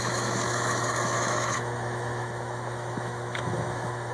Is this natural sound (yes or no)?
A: no